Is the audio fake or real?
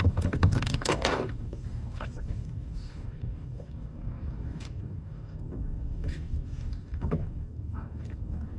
fake